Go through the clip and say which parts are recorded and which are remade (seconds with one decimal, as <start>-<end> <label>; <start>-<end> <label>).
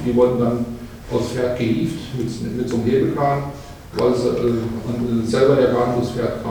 0.0-6.5 recorded